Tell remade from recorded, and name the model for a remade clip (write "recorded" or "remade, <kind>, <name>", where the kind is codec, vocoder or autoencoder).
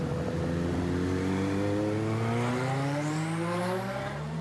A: recorded